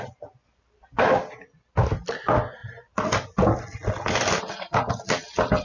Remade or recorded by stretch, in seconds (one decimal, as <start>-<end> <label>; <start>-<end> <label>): 0.0-5.6 recorded